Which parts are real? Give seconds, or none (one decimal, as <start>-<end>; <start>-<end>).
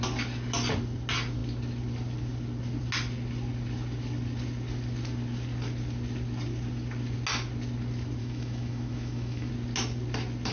0.0-8.2; 9.5-10.5